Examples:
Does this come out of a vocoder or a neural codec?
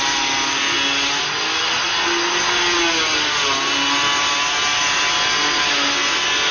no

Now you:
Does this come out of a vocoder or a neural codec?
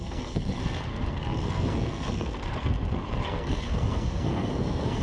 yes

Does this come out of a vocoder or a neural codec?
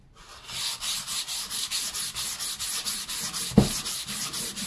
no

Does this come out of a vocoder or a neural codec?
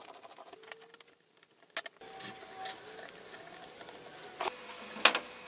no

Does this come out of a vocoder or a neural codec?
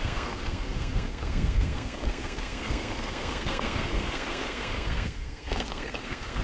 yes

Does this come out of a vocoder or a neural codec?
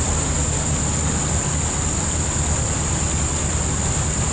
no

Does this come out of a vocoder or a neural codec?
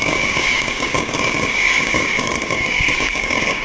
yes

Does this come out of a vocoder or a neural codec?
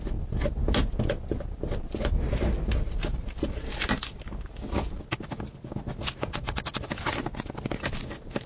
no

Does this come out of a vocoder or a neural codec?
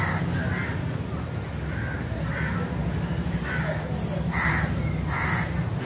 no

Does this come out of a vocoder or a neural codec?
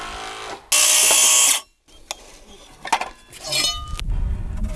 no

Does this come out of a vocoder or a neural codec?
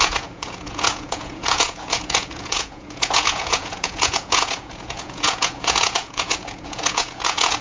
yes